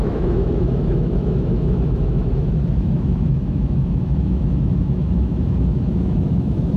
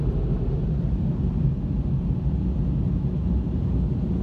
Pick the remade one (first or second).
first